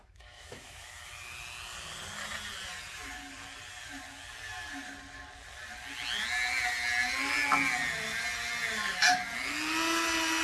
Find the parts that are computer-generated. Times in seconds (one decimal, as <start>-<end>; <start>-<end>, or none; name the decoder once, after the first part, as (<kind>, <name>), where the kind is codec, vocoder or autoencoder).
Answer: 0.0-1.1 (autoencoder, DAC-VAE)

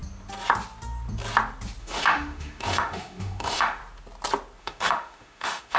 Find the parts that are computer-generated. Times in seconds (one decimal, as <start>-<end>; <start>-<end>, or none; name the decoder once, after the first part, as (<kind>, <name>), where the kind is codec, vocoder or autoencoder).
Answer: 1.8-3.8 (autoencoder, DAC-VAE); 4.6-5.8

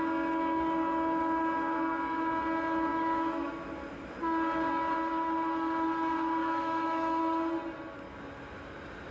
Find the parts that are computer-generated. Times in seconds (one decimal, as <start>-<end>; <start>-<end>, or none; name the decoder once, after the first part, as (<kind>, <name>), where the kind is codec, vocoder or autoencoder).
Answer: 2.9-3.5 (autoencoder, DAC-VAE); 6.4-7.2

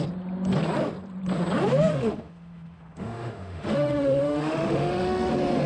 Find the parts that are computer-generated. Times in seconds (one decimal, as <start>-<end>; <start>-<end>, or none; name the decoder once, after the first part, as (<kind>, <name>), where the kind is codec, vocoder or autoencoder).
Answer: 1.9-5.3 (autoencoder, DAC-VAE)

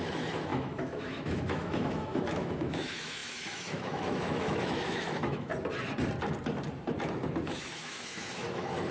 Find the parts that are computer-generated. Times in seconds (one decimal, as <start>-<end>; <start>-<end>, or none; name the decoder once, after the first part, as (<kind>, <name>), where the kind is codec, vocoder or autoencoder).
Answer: 0.0-5.5 (autoencoder, DAC-VAE); 7.4-8.9

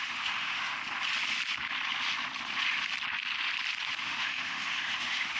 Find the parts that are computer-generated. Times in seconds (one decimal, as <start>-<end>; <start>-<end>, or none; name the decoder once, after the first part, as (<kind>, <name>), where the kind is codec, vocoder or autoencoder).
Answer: 0.0-0.8 (autoencoder, DAC-VAE); 4.0-5.4